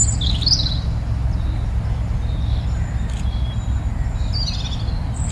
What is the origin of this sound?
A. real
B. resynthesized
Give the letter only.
A